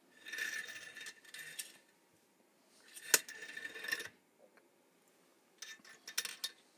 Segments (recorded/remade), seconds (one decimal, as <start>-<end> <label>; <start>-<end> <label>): 0.0-6.8 recorded